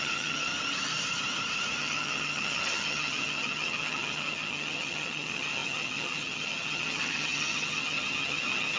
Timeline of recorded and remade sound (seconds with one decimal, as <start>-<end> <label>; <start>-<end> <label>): 0.0-0.5 remade; 0.5-1.8 recorded; 1.8-8.8 remade